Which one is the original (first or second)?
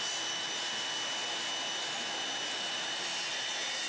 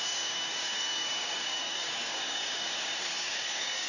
first